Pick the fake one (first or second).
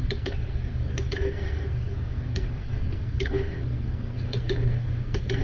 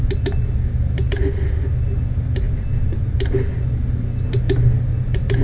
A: first